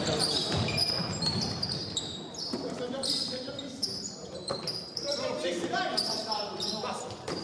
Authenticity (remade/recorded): remade